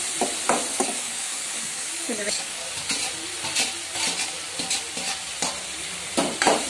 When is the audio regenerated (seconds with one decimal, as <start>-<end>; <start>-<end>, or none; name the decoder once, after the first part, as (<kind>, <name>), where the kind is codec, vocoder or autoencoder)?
0.7-2.6 (codec, DAC)